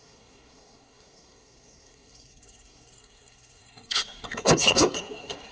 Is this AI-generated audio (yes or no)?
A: yes